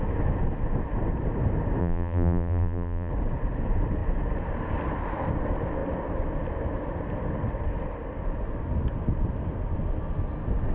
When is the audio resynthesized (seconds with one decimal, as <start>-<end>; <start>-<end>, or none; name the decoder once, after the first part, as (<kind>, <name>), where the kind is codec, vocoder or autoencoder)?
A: 1.8-3.1 (vocoder, BigVGAN v2)